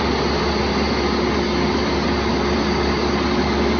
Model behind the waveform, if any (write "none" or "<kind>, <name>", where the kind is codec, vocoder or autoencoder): none